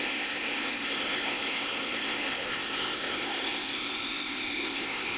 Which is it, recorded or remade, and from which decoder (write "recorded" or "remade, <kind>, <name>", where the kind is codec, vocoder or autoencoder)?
remade, codec, ZipCodec